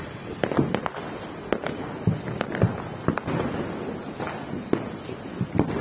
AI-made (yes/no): no